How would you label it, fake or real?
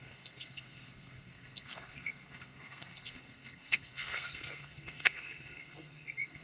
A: fake